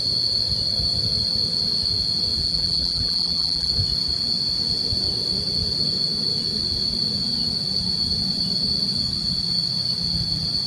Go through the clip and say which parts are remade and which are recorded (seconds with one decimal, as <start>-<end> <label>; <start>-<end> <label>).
0.0-2.4 recorded; 2.4-3.7 remade; 3.7-10.7 recorded